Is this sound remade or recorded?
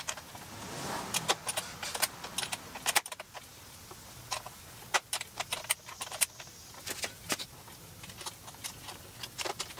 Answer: recorded